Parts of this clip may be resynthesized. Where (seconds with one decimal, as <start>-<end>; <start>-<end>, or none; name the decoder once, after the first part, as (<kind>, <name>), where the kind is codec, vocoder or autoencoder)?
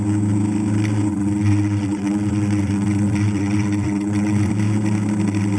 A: 1.1-4.5 (vocoder, WaveNeXt)